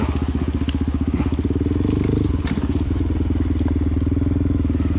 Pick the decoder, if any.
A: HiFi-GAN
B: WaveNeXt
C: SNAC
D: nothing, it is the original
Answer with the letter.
D